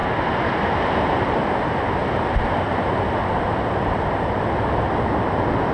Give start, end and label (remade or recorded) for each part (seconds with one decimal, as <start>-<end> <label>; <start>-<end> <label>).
0.0-5.7 recorded